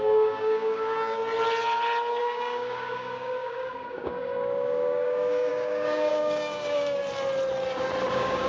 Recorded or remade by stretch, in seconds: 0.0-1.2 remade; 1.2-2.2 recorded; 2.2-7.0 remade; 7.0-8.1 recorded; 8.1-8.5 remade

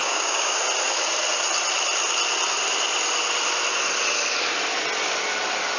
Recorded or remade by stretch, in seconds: 0.0-0.6 remade; 0.6-5.8 recorded